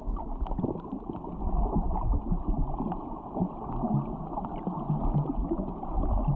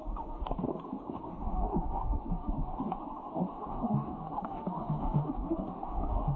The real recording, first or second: first